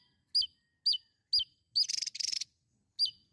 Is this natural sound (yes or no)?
yes